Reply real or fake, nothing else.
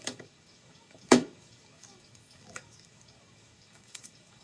fake